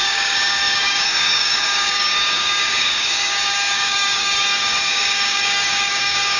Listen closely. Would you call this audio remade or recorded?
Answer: remade